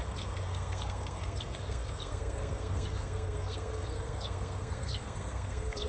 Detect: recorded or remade remade